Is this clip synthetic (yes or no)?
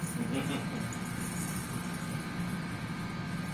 no